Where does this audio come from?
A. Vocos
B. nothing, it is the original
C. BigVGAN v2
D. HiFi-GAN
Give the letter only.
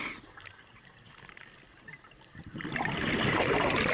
B